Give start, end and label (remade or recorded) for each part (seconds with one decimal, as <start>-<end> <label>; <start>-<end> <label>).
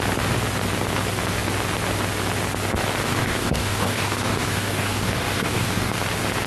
0.0-3.0 recorded; 3.0-6.0 remade; 6.0-6.5 recorded